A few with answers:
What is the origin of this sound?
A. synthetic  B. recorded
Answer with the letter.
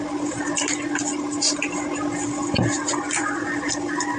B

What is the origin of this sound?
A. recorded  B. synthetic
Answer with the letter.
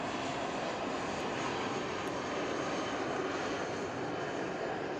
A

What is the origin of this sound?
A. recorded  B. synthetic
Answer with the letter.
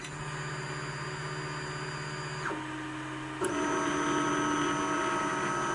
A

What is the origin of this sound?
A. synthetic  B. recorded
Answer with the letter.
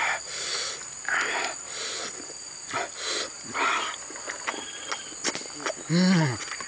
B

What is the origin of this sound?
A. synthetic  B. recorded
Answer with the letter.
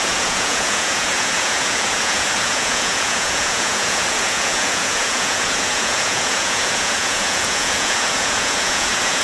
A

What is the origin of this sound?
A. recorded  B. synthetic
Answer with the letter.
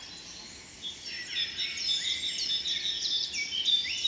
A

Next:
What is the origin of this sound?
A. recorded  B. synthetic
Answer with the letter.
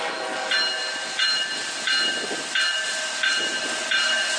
A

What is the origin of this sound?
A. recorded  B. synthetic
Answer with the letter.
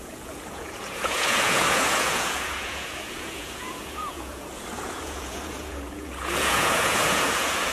B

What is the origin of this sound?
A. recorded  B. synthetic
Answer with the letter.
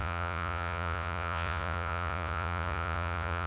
B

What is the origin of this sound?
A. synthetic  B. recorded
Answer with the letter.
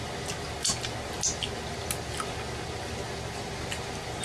B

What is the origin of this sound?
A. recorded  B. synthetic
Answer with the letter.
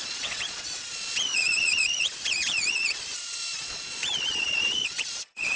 B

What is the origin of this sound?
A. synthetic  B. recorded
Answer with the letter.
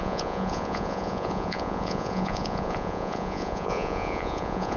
A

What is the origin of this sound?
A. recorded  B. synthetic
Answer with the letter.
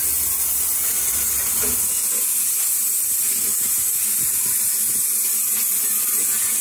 A